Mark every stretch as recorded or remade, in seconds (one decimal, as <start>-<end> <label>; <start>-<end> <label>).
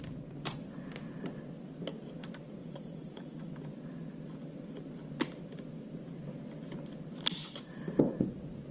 0.0-2.6 recorded; 2.6-3.5 remade; 3.5-7.3 recorded; 7.3-8.0 remade; 8.0-8.7 recorded